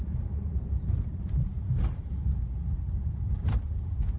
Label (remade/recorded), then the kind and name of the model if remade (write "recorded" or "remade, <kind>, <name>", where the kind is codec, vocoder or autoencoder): remade, vocoder, BigVGAN v2